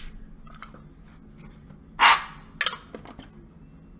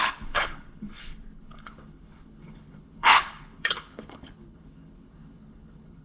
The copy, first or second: second